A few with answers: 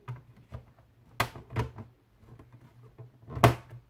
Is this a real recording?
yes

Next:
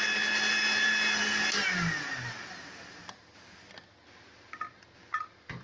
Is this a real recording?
yes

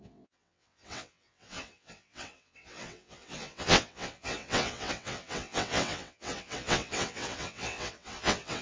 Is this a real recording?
no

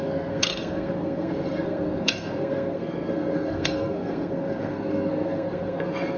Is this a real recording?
no